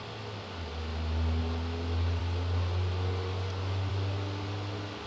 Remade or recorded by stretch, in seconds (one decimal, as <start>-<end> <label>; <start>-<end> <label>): 0.0-5.1 recorded